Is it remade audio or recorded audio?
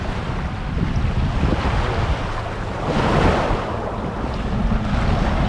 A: recorded